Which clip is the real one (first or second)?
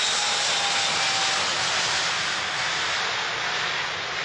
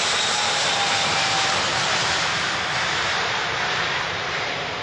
first